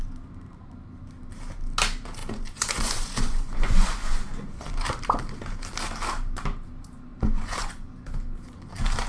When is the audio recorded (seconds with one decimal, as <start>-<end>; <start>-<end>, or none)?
0.0-2.2; 4.7-7.1; 7.9-9.1